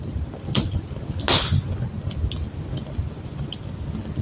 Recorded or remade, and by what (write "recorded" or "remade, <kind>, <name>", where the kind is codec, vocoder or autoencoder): recorded